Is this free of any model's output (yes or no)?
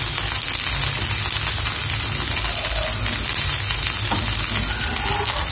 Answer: yes